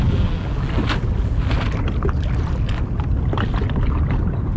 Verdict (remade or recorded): recorded